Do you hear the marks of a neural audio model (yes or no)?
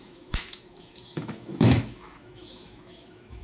yes